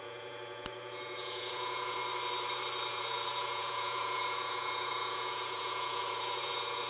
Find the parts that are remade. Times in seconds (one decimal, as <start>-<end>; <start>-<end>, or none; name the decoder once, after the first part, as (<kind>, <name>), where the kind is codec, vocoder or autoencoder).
0.0-2.0 (vocoder, Vocos); 2.9-6.9